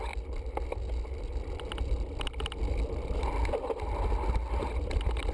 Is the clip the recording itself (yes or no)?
yes